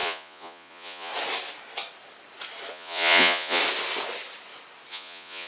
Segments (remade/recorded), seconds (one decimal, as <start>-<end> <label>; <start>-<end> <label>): 0.0-1.1 remade; 1.1-2.7 recorded; 2.7-3.6 remade; 3.6-4.9 recorded; 4.9-5.5 remade